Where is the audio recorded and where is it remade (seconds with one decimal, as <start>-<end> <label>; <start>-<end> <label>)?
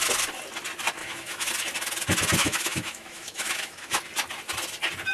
0.0-1.0 recorded; 1.0-1.5 remade; 1.5-2.4 recorded; 2.4-4.0 remade; 4.0-5.1 recorded